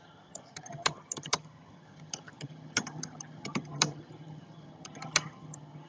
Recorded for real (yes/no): no